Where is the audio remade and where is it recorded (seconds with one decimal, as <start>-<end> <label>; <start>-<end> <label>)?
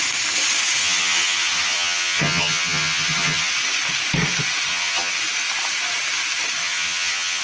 0.0-0.8 recorded; 0.8-3.5 remade; 3.5-4.7 recorded; 4.7-5.2 remade; 5.2-6.6 recorded; 6.6-7.4 remade